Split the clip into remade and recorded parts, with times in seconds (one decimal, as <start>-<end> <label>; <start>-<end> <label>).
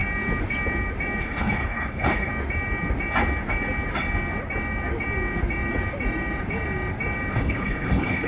0.0-1.2 recorded; 1.2-2.3 remade; 2.3-7.3 recorded; 7.3-8.3 remade